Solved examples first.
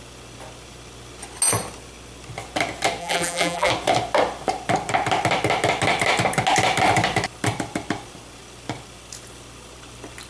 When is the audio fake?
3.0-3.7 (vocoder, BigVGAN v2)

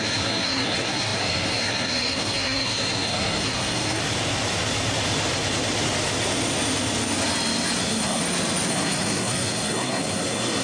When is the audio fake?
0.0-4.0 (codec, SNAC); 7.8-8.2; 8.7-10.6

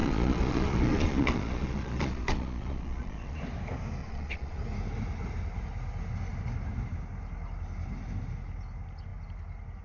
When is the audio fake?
0.0-3.4 (vocoder, Vocos); 4.0-4.6

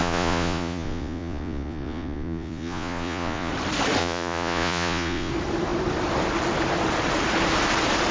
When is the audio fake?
0.0-3.5 (vocoder, Vocos); 4.0-5.3